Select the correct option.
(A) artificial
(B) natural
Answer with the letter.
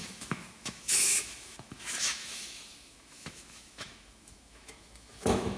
A